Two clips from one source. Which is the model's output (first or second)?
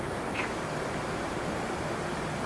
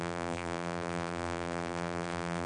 second